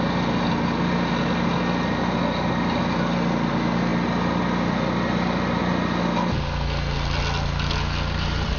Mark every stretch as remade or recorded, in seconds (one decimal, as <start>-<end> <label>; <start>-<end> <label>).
0.0-8.6 recorded